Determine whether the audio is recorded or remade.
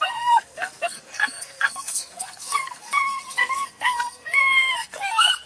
remade